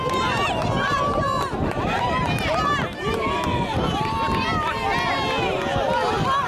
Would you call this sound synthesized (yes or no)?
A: no